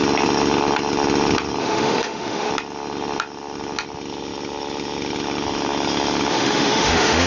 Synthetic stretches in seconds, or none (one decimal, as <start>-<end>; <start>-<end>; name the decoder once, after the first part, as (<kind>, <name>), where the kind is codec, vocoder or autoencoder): 1.6-2.5 (autoencoder, DAC-VAE); 6.3-7.3